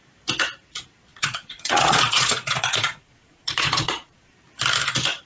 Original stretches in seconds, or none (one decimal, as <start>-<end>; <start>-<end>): 0.0-1.1; 4.3-5.3